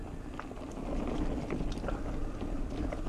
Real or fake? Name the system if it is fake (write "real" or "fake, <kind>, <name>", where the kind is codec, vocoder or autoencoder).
real